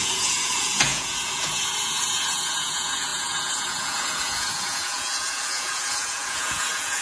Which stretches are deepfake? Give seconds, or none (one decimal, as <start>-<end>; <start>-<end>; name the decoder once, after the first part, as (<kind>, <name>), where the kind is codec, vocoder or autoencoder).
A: 0.0-7.0 (vocoder, Vocos)